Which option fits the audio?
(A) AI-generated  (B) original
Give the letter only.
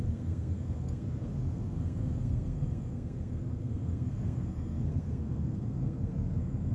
A